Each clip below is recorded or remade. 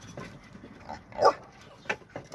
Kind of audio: recorded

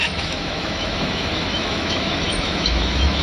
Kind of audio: remade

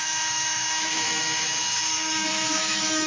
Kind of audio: remade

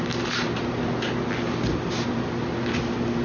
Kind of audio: recorded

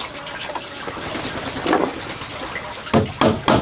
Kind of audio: recorded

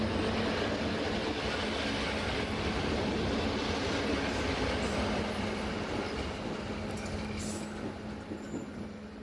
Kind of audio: recorded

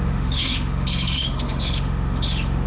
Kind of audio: remade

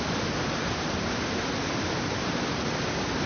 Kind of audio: recorded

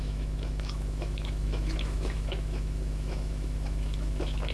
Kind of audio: remade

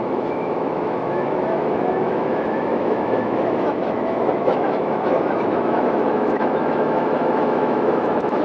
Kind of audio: remade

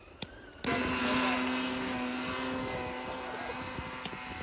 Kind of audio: recorded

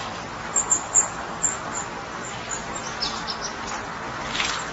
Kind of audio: recorded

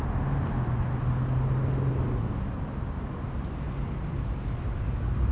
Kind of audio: recorded